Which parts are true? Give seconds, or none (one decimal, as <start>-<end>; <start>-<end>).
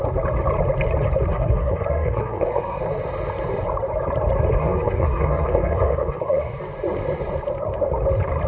0.0-1.3; 2.8-4.6; 6.6-8.5